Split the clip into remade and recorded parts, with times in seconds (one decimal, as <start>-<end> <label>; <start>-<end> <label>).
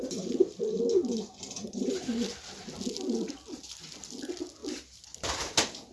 0.0-5.9 recorded